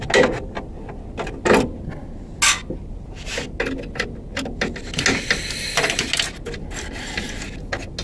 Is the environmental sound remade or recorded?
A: recorded